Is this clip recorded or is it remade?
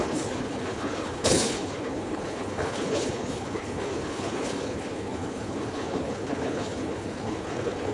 remade